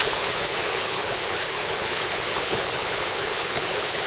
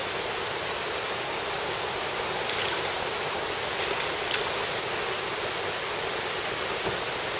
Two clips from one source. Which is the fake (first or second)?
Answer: first